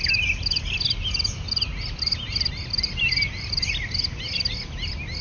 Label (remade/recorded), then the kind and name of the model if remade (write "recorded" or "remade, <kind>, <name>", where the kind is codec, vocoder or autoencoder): recorded